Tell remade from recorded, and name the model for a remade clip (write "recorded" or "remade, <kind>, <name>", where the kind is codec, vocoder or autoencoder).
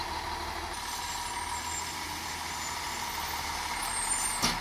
recorded